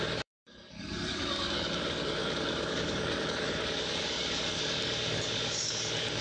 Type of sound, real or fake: fake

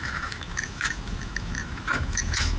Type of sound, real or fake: fake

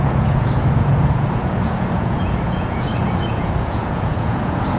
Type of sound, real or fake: fake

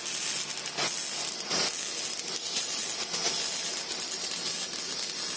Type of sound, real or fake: real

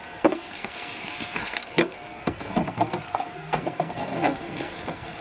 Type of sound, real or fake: fake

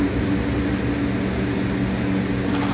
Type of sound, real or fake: real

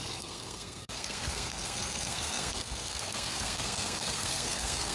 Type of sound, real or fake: fake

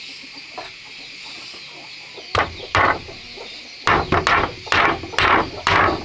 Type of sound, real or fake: real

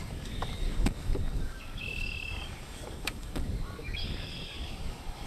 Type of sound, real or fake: fake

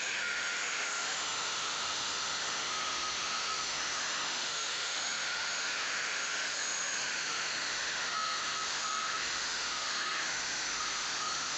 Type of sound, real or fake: fake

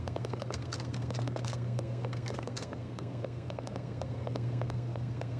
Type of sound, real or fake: fake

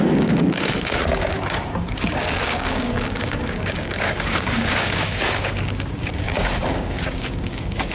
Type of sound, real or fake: fake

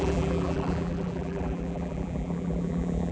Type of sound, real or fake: fake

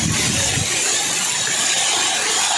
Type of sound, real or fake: real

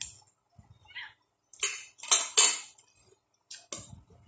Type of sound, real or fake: real